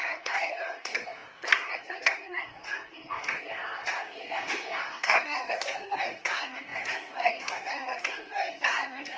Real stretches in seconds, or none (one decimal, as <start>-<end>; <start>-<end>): none